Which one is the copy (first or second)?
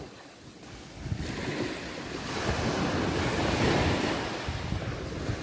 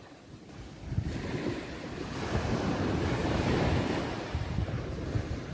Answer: second